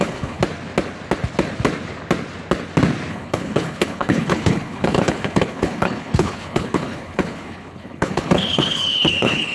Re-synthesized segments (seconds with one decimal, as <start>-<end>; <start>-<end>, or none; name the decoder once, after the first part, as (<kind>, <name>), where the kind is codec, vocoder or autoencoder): 0.0-0.4 (codec, HILCodec); 3.1-9.5